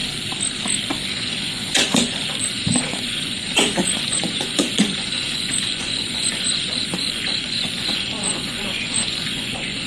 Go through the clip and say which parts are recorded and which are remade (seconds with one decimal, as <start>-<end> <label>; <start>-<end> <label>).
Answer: 0.0-1.1 recorded; 1.1-9.9 remade

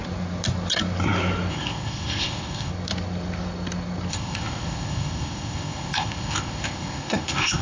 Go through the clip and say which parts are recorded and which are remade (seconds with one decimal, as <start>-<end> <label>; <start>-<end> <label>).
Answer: 0.0-1.5 recorded; 1.5-2.7 remade; 2.7-4.1 recorded; 4.1-7.6 remade

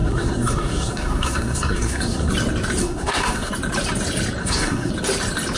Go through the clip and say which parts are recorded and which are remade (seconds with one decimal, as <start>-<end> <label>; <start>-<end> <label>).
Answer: 0.0-2.3 remade; 2.3-2.8 recorded; 2.8-3.5 remade; 3.5-4.4 recorded; 4.4-4.9 remade; 4.9-5.6 recorded

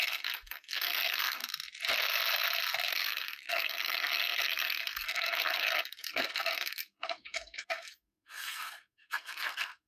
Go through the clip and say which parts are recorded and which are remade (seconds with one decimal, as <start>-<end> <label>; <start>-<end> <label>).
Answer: 0.0-1.4 remade; 1.4-2.9 recorded; 2.9-9.9 remade

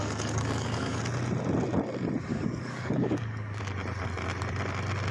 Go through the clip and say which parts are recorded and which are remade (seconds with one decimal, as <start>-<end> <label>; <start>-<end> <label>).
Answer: 0.0-1.0 remade; 1.0-2.3 recorded; 2.3-3.6 remade; 3.6-5.1 recorded

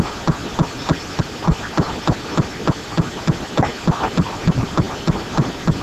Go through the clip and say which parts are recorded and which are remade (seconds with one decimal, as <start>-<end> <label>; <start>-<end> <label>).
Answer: 0.0-5.8 recorded

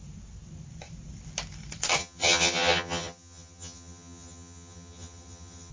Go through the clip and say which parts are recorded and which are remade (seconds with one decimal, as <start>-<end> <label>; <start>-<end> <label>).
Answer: 0.0-2.0 recorded; 2.0-5.7 remade

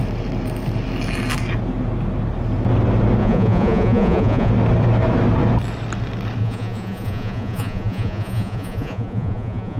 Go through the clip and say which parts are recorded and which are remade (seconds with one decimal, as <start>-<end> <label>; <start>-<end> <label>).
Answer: 0.0-3.2 recorded; 3.2-4.5 remade; 4.5-6.4 recorded; 6.4-9.8 remade